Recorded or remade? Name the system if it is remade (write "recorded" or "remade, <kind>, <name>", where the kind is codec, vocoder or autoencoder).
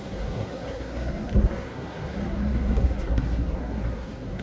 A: remade, codec, SNAC